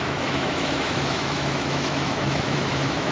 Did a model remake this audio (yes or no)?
yes